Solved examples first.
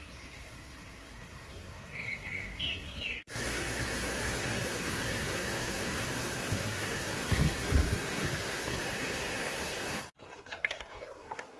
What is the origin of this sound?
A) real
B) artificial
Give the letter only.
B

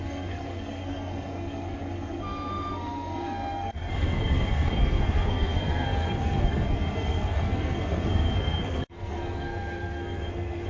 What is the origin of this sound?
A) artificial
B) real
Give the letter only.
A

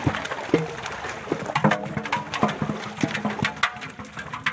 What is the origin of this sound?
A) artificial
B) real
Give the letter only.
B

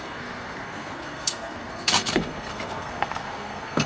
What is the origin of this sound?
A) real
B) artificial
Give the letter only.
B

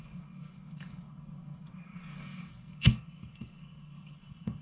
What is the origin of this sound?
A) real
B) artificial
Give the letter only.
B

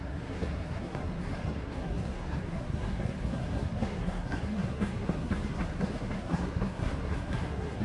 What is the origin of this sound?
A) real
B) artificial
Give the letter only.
B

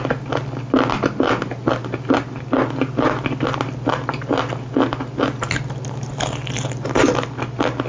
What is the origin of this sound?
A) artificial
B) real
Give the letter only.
B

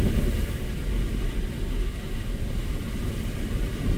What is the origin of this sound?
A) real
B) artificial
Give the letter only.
A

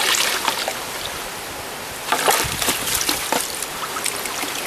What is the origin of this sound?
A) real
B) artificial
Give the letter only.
A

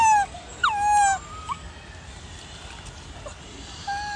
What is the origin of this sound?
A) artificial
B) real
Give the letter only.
B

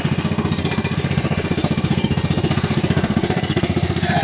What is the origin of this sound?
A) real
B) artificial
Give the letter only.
B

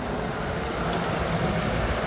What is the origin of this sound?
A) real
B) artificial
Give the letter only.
A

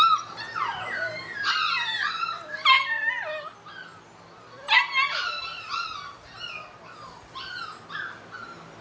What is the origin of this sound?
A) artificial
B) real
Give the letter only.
B